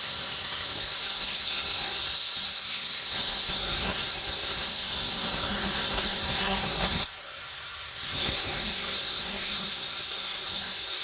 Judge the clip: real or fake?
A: fake